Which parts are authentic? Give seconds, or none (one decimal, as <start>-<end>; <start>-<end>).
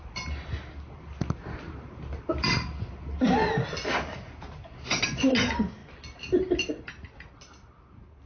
0.0-8.3